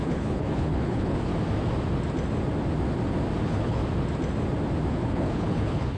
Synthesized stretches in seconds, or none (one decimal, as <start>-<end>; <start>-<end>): 0.0-1.3; 3.4-3.8; 4.9-6.0